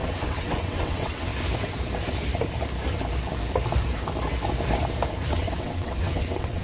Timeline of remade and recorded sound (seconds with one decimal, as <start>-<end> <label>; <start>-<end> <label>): 0.0-1.3 remade; 1.3-5.3 recorded; 5.3-6.6 remade